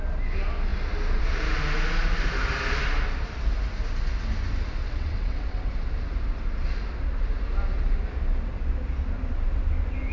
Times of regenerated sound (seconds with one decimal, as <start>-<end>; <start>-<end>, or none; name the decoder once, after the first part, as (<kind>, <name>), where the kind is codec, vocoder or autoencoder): 4.8-5.7 (vocoder, WaveNeXt)